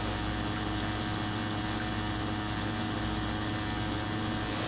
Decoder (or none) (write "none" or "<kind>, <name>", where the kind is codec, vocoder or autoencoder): none